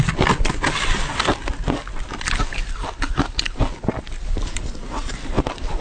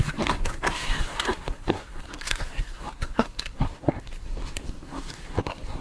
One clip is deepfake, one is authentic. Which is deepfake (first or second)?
second